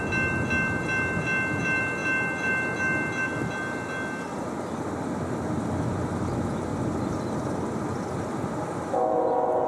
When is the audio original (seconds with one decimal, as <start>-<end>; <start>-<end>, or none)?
0.0-4.3; 5.0-6.7; 8.0-9.7